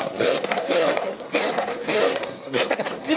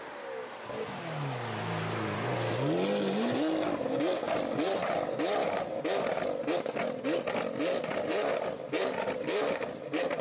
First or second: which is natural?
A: second